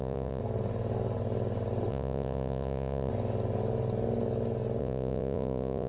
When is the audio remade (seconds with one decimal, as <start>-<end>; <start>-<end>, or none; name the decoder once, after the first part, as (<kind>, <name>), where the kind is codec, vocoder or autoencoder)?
0.0-0.4 (vocoder, Vocos); 1.9-3.1; 4.8-5.9